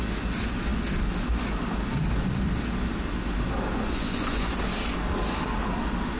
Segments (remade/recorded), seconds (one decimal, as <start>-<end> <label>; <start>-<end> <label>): 0.0-3.7 recorded; 3.7-4.5 remade; 4.5-6.2 recorded